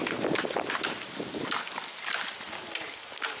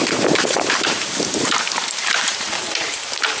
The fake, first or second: second